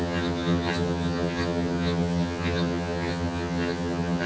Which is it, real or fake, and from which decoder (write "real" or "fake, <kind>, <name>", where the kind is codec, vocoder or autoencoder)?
fake, vocoder, HiFi-GAN